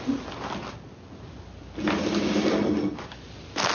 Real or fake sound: real